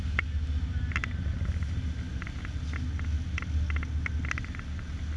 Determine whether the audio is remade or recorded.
recorded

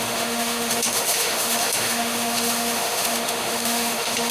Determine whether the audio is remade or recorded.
remade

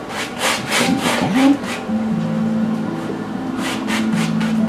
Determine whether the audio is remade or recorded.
recorded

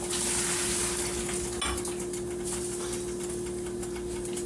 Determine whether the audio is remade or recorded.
recorded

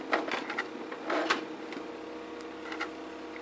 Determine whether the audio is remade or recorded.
recorded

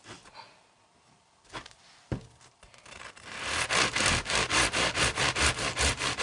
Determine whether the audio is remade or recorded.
recorded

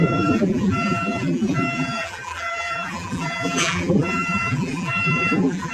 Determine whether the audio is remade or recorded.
remade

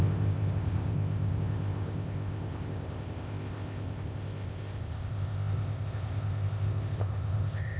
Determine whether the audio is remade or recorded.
remade